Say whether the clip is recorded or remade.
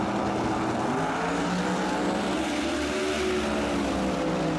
recorded